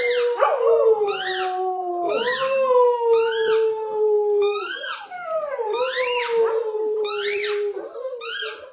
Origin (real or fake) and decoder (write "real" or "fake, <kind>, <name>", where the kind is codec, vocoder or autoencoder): fake, vocoder, BigVGAN v2